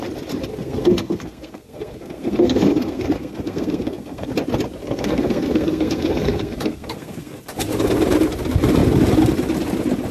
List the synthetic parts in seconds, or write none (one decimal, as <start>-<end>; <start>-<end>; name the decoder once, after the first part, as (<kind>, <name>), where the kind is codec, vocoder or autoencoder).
0.5-4.3 (codec, SNAC); 4.8-7.4